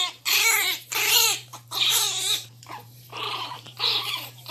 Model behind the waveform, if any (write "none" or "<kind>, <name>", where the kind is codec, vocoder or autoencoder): vocoder, BigVGAN v2